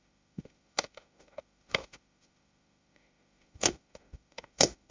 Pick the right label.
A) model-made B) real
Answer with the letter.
A